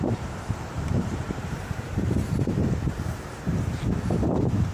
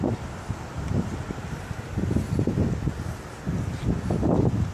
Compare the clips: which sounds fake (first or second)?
first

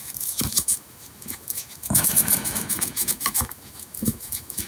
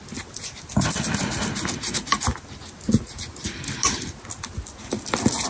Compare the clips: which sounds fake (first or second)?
first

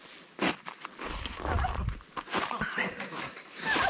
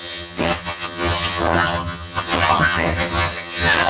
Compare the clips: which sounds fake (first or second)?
second